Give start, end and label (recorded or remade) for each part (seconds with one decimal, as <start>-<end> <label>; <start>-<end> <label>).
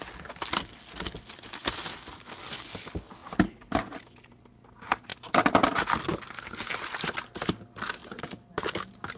0.0-8.0 recorded; 8.0-8.7 remade; 8.7-9.2 recorded